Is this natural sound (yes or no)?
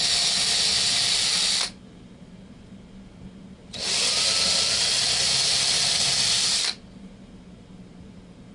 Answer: yes